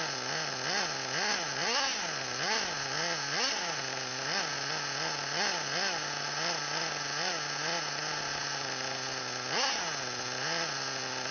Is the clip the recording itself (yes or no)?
yes